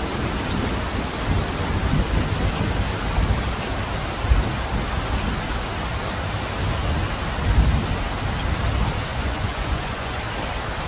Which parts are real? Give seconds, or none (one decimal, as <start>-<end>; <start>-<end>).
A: 0.0-9.1; 10.2-10.9